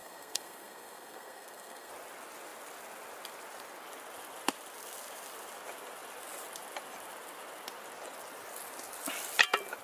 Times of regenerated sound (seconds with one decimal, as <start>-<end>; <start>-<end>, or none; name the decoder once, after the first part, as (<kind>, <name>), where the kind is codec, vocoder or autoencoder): 0.0-1.9 (codec, SNAC)